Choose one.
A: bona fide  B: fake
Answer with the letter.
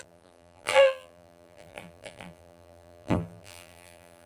B